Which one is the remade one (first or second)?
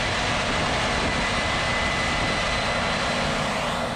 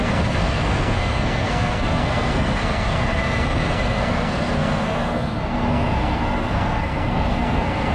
second